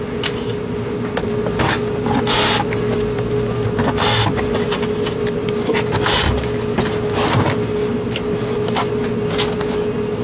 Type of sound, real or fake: real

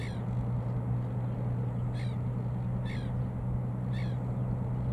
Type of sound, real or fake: real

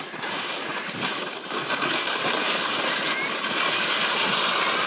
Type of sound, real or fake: fake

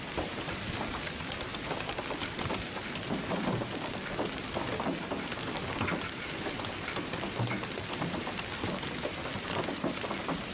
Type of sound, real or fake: fake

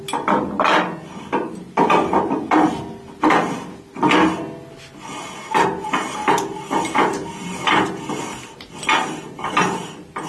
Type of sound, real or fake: real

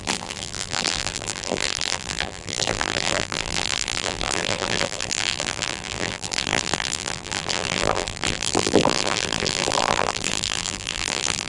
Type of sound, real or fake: fake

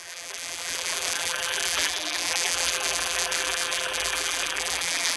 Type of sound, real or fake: fake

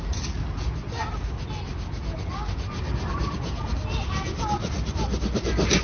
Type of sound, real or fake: real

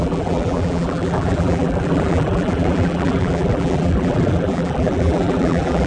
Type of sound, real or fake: fake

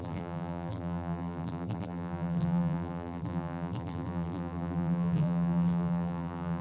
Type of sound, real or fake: fake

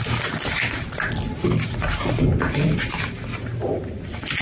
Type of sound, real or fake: real